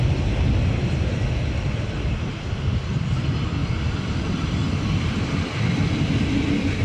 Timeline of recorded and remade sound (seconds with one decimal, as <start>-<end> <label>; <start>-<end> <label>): 0.0-6.8 recorded